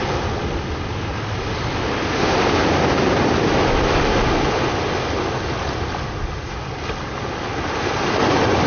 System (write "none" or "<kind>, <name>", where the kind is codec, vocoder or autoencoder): none